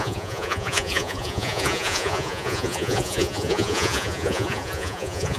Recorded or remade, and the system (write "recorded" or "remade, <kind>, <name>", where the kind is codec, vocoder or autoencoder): remade, vocoder, Vocos